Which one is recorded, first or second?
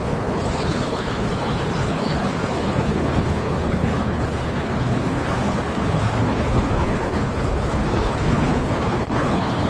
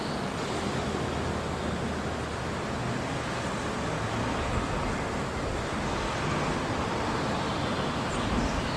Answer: second